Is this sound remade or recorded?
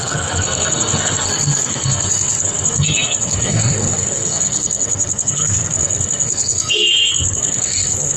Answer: remade